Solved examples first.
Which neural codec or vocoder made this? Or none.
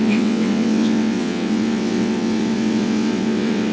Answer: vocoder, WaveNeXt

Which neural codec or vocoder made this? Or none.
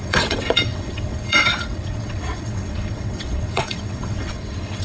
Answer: vocoder, WaveNeXt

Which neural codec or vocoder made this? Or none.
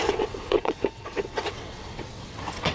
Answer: vocoder, WaveNeXt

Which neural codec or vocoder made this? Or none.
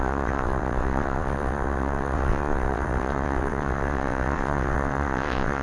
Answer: vocoder, WaveNeXt